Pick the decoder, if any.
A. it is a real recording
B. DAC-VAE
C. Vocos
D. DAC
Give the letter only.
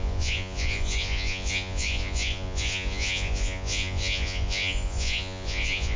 C